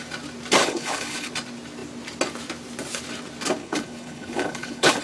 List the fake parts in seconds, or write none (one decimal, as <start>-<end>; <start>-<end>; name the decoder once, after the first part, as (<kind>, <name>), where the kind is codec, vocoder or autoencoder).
0.6-1.3 (codec, HILCodec); 3.6-5.0